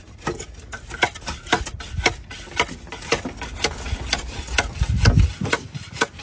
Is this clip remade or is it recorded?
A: recorded